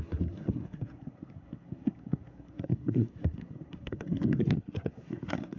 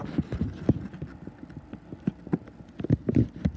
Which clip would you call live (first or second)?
second